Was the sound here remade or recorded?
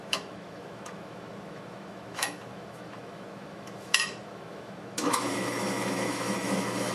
remade